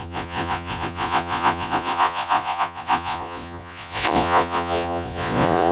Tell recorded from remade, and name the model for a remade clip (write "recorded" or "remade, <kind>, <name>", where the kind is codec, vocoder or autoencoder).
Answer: remade, vocoder, Vocos